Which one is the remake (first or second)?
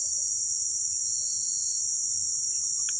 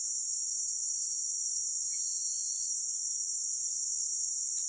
second